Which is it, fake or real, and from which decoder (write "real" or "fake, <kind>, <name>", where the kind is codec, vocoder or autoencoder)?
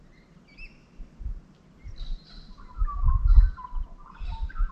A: real